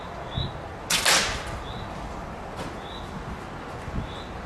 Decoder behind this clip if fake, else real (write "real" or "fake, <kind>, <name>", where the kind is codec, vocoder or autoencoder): real